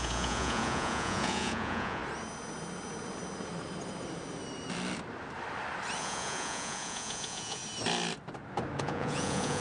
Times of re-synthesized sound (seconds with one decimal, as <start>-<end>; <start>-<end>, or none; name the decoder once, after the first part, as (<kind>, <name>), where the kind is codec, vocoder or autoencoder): 0.0-2.0 (vocoder, Vocos); 6.0-7.6; 8.8-9.6